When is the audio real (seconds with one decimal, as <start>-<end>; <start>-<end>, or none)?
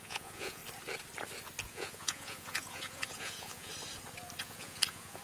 0.6-1.6; 3.7-4.4